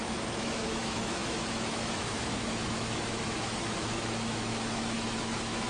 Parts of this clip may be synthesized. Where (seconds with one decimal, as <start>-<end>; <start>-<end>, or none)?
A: 0.0-5.7